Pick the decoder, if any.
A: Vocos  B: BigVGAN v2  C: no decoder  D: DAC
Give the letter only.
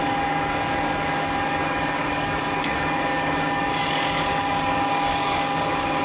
D